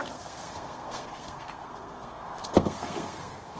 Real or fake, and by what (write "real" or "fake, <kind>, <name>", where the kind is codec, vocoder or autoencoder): fake, codec, SNAC